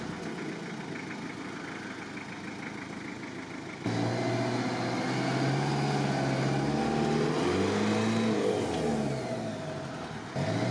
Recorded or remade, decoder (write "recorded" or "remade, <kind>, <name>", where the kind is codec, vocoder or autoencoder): recorded